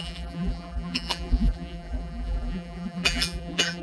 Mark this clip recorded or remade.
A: remade